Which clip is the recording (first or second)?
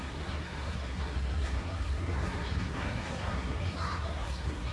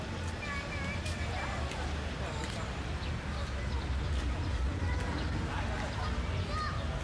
second